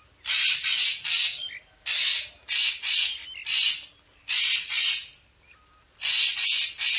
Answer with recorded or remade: recorded